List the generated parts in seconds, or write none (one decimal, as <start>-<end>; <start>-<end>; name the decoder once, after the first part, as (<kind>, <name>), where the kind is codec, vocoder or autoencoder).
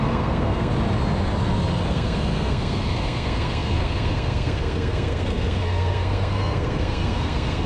0.0-0.7 (codec, SNAC); 1.9-7.7